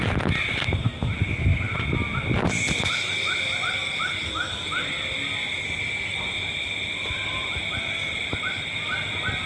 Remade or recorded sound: recorded